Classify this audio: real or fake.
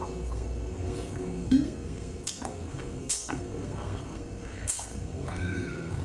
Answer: fake